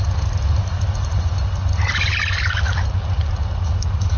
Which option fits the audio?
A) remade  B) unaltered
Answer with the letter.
B